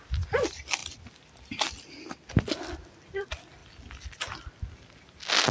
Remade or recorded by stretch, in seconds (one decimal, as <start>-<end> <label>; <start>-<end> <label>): 0.0-5.5 recorded